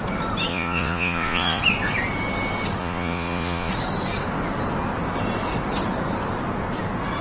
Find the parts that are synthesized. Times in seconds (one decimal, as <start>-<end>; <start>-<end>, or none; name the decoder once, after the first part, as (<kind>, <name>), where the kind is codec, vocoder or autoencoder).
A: 0.5-1.6 (vocoder, Vocos); 2.8-3.7